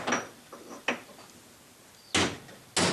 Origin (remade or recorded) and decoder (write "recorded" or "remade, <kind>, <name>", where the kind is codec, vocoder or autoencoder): recorded